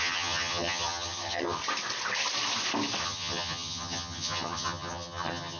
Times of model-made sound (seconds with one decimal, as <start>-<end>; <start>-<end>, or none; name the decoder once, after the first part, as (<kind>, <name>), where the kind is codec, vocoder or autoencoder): 0.0-1.6 (vocoder, HiFi-GAN); 3.0-5.6